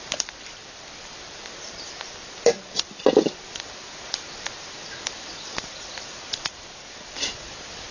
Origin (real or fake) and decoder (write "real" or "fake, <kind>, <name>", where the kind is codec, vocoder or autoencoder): fake, vocoder, BigVGAN v2